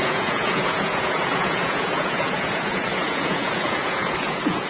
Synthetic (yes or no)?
yes